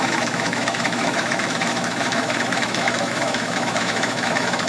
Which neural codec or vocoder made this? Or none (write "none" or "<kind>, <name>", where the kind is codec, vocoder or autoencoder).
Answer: autoencoder, DAC-VAE